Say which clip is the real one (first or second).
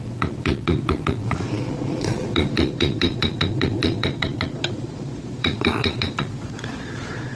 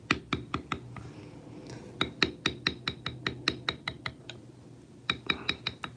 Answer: second